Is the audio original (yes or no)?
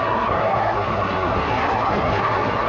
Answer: no